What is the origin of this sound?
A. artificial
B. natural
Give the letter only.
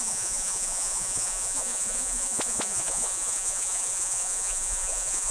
A